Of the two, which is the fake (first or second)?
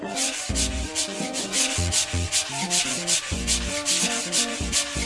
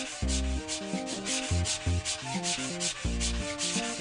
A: first